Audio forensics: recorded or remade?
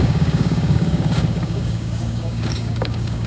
remade